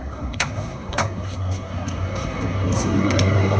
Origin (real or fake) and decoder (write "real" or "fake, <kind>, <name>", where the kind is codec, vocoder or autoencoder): fake, codec, SNAC